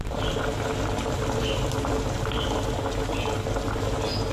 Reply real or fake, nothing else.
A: real